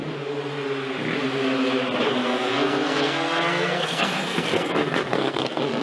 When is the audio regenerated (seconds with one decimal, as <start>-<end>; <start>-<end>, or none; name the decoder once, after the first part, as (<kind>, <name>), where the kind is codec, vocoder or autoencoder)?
2.2-5.8 (codec, SNAC)